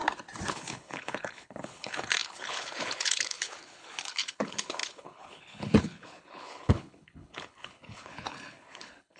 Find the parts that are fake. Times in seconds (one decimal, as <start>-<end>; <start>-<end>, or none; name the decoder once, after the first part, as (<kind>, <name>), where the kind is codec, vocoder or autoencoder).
0.5-9.2 (codec, HILCodec)